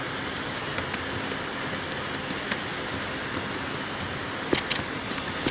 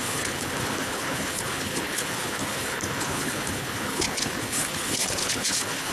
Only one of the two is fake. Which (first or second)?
second